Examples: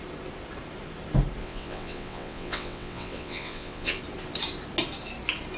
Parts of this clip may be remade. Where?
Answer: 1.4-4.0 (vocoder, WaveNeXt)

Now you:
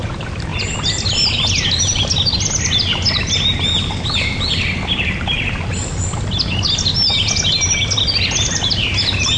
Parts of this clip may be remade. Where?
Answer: none

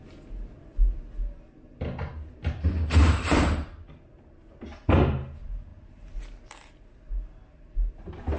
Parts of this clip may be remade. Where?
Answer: none

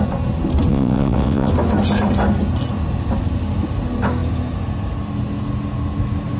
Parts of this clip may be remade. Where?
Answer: 0.7-1.5 (vocoder, WaveNeXt)